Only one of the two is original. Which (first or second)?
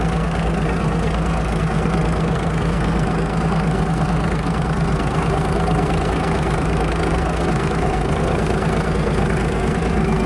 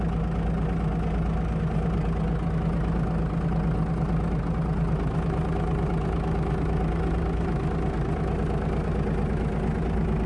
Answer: second